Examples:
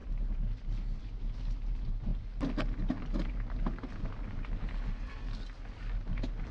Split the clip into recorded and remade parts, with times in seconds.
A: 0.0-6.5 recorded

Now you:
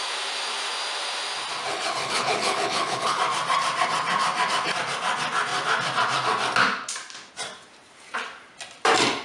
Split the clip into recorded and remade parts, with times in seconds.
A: 0.0-1.7 recorded; 1.7-3.2 remade; 3.2-9.2 recorded

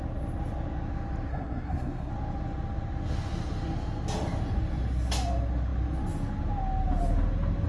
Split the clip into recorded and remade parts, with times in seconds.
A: 0.0-1.3 recorded; 1.3-2.1 remade; 2.1-7.7 recorded

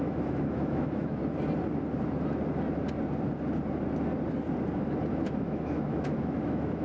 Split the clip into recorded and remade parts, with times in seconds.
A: 0.0-1.2 remade; 1.2-5.1 recorded; 5.1-6.8 remade

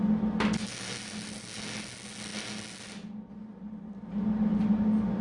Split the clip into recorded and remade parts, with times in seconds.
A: 0.0-5.2 recorded

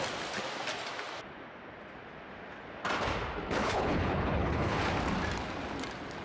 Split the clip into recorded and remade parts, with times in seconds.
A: 0.0-3.6 recorded; 3.6-4.8 remade; 4.8-6.2 recorded

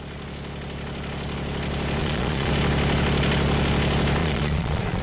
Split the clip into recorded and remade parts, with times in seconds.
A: 0.0-2.0 recorded; 2.0-2.5 remade; 2.5-4.2 recorded; 4.2-5.0 remade

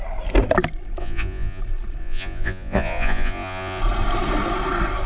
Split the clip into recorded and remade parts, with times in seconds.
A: 0.0-1.0 recorded; 1.0-1.6 remade; 1.6-2.0 recorded; 2.0-3.8 remade; 3.8-5.1 recorded